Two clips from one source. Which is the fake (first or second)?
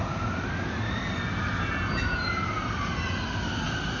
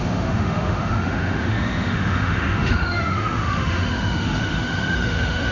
second